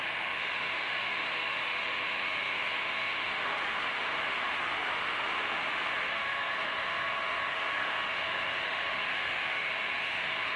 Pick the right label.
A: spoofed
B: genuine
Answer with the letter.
A